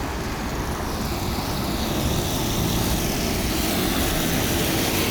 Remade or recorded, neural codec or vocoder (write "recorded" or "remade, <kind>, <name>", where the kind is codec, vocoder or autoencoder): recorded